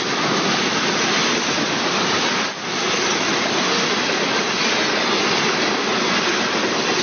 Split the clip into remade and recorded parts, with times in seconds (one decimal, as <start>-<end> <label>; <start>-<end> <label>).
0.0-7.0 recorded